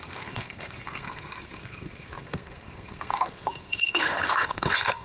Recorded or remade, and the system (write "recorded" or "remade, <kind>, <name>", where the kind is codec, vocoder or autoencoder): remade, codec, SNAC